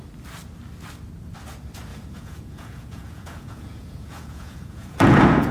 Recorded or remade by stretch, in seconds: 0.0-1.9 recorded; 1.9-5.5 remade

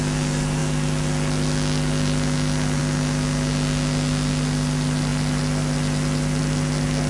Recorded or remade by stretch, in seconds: 0.0-7.1 recorded

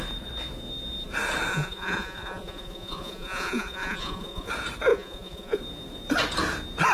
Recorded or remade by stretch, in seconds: 0.0-1.5 recorded; 1.5-4.5 remade; 4.5-4.9 recorded; 4.9-5.6 remade; 5.6-6.9 recorded